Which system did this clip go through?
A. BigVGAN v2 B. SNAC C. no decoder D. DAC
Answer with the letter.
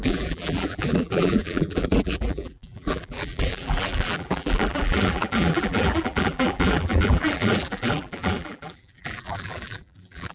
A